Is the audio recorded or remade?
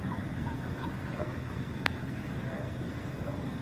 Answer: remade